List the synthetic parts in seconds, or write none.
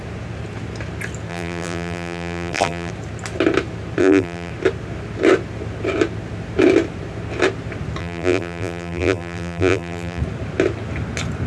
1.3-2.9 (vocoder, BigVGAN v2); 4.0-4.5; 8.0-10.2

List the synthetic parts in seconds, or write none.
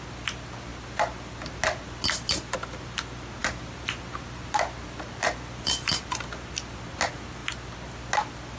0.7-1.4 (vocoder, BigVGAN v2); 3.4-6.0; 7.4-8.1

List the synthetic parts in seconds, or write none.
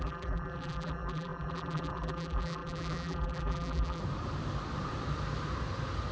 0.0-4.0 (vocoder, BigVGAN v2)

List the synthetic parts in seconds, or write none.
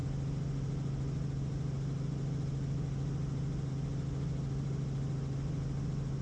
none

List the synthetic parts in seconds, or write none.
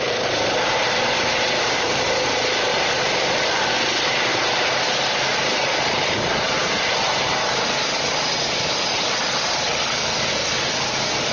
2.7-3.5 (vocoder, BigVGAN v2); 4.3-7.1